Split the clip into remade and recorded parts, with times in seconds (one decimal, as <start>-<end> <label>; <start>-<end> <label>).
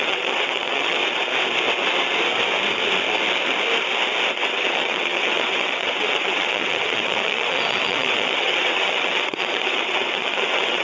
0.0-1.0 remade; 1.0-4.3 recorded; 4.3-10.8 remade